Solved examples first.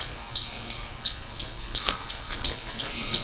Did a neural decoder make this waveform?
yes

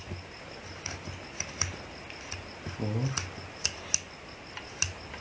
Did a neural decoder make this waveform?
no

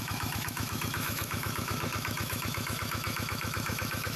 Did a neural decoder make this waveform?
yes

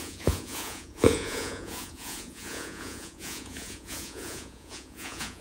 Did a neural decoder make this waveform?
yes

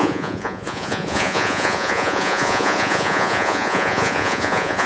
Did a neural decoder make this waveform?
yes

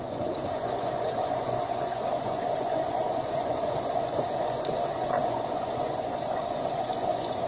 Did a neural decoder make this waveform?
yes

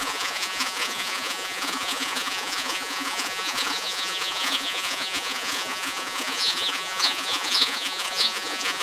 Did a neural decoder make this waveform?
yes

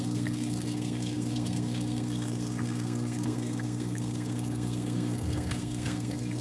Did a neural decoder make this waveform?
yes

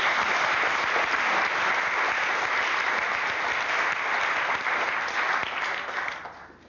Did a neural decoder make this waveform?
no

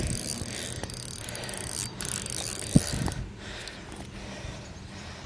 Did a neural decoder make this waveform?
no